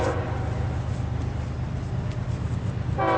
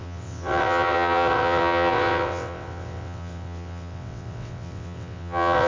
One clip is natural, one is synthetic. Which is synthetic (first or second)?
second